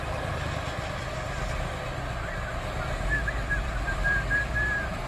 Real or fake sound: fake